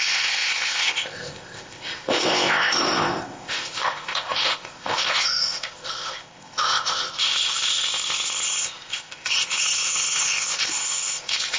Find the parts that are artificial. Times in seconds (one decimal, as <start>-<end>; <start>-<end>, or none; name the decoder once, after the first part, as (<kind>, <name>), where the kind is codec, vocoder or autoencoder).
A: 0.0-11.6 (codec, ZipCodec)